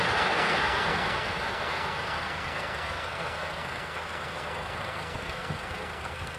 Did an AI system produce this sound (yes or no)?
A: yes